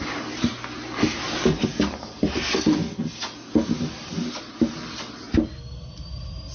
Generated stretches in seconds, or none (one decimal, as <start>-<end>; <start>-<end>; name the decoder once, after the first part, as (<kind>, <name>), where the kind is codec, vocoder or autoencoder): none